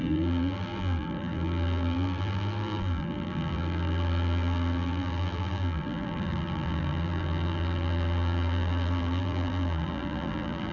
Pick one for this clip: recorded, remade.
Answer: remade